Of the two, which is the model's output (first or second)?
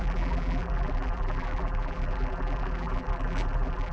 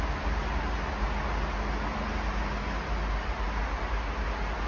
first